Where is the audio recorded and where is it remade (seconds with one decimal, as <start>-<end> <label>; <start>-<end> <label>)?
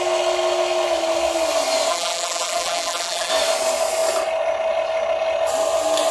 0.0-1.9 recorded; 1.9-3.3 remade; 3.3-6.1 recorded